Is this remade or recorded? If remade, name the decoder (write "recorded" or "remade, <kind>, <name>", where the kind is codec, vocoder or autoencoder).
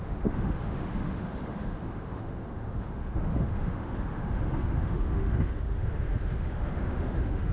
remade, autoencoder, DAC-VAE